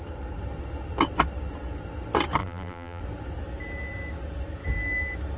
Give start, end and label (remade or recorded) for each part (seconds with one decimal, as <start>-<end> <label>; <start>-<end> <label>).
0.0-2.4 recorded; 2.4-3.0 remade; 3.0-5.4 recorded